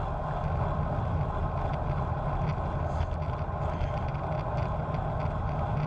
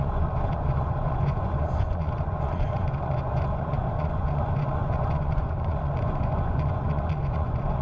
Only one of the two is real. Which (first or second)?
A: first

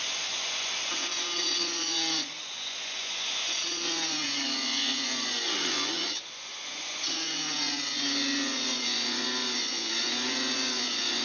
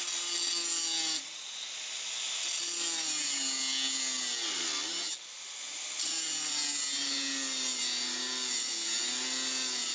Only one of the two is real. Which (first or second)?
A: second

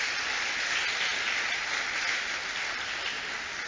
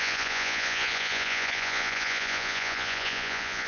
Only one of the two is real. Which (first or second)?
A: first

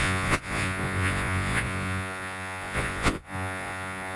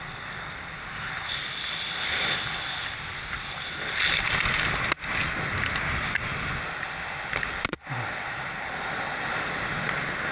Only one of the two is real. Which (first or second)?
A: second